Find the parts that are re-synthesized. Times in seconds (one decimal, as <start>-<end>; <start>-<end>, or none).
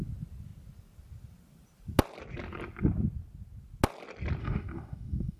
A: 4.4-5.4